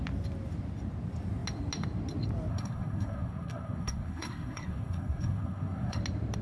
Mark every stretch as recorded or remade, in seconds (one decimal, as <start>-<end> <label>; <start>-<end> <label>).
0.0-2.5 recorded; 2.5-6.0 remade; 6.0-6.4 recorded